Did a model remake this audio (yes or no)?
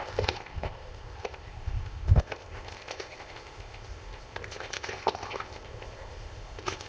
yes